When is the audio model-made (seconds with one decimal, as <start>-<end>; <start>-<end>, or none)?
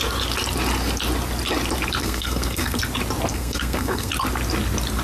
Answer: 2.0-2.8; 3.3-4.1